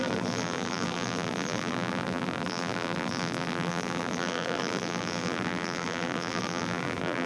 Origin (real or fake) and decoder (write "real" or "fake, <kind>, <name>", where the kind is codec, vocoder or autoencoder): fake, vocoder, BigVGAN v2